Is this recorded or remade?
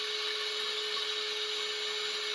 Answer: recorded